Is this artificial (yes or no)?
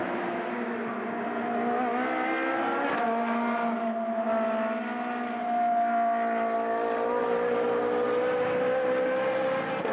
no